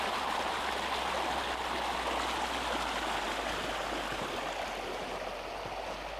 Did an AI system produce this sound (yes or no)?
no